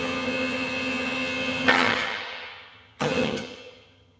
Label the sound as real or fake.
fake